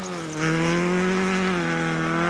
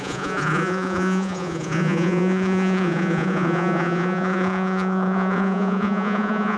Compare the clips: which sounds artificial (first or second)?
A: second